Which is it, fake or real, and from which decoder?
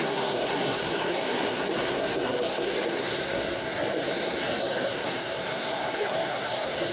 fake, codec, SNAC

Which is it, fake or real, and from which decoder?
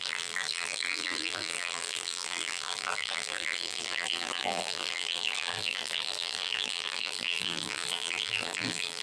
fake, vocoder, BigVGAN v2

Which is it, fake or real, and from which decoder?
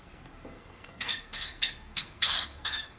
fake, codec, SNAC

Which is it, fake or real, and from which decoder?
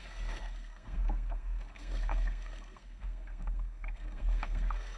fake, codec, SNAC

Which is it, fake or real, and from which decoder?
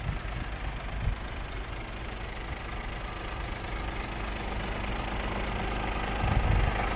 real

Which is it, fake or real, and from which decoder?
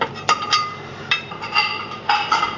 fake, vocoder, BigVGAN v2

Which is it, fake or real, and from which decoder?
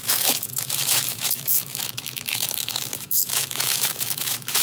fake, autoencoder, DAC-VAE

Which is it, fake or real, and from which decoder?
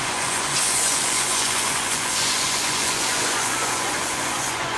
fake, vocoder, Vocos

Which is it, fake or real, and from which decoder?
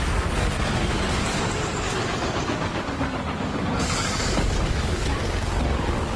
fake, codec, DAC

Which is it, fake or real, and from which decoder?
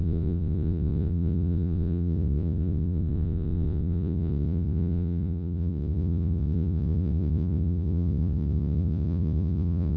fake, vocoder, Vocos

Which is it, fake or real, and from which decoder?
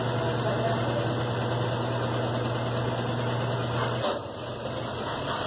real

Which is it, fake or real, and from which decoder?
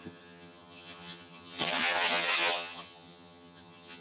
fake, vocoder, HiFi-GAN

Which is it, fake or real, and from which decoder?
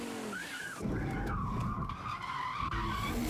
real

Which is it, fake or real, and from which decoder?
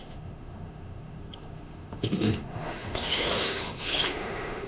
fake, autoencoder, DAC-VAE